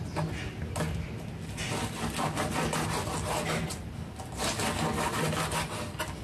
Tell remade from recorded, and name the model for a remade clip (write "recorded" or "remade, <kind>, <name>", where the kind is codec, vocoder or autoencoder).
recorded